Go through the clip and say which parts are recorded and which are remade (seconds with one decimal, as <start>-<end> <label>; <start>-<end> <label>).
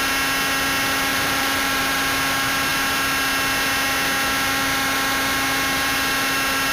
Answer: 0.0-1.1 recorded; 1.1-1.8 remade; 1.8-6.7 recorded